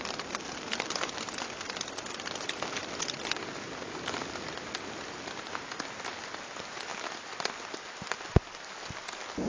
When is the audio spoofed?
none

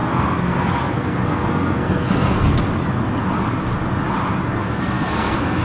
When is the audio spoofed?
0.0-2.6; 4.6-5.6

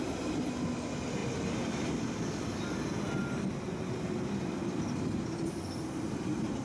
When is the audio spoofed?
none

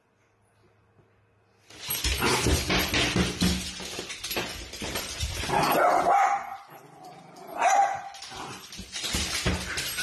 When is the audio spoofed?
4.1-5.3; 6.5-9.3

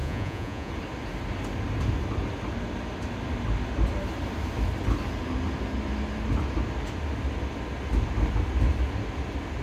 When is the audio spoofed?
0.0-0.7

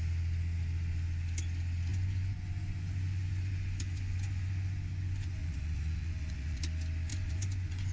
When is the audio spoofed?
1.9-6.6; 7.1-7.9